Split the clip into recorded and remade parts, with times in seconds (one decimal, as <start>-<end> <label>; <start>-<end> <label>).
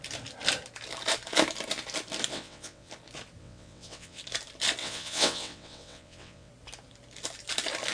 0.0-2.3 recorded; 2.3-2.9 remade; 2.9-3.4 recorded; 3.4-4.2 remade; 4.2-4.8 recorded; 4.8-6.5 remade; 6.5-7.9 recorded